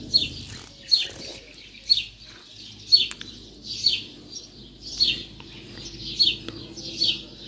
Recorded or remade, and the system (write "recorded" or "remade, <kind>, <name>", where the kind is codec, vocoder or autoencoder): recorded